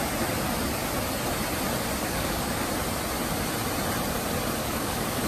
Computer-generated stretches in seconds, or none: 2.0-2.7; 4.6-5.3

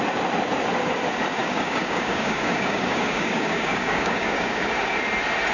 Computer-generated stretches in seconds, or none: 1.4-4.7

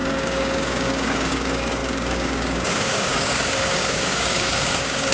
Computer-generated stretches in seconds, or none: 0.0-5.1

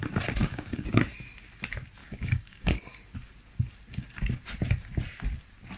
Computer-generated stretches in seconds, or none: 0.4-1.1; 2.0-2.8

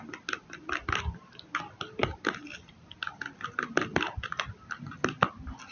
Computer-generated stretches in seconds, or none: none

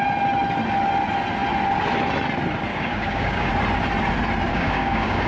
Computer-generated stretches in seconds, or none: 2.7-3.5; 4.5-5.3

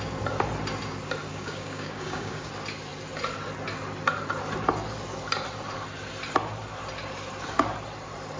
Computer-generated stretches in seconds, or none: 1.3-2.5